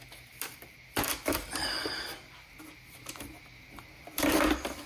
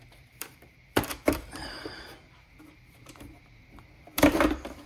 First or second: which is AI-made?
second